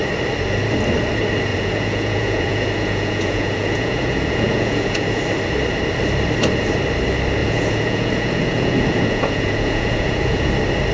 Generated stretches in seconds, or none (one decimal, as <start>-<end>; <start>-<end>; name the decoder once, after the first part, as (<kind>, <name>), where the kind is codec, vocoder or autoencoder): 1.5-5.2 (vocoder, Vocos); 7.4-10.5